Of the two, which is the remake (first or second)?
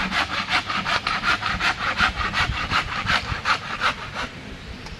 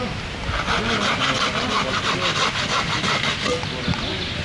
first